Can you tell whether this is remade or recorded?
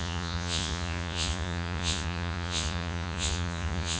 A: remade